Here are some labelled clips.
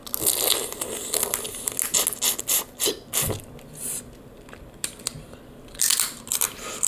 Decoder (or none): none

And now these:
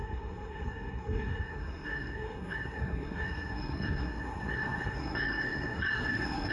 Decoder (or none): codec, SNAC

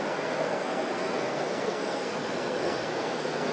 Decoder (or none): codec, SNAC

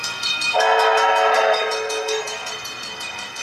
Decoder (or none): codec, SNAC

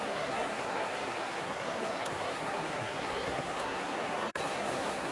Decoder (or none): codec, SNAC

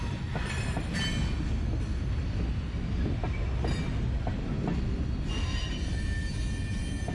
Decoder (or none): none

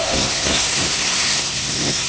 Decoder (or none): codec, SNAC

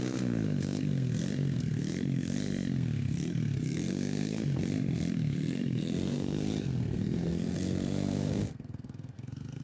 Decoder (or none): codec, SNAC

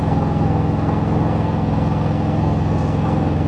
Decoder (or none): codec, SNAC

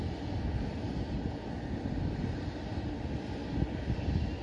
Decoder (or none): none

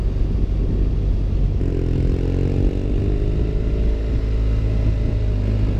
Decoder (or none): none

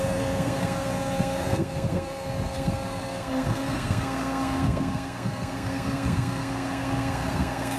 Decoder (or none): codec, SNAC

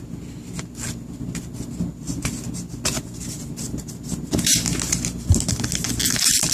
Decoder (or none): none